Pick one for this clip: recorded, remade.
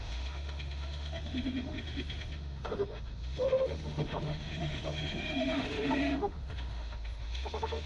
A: remade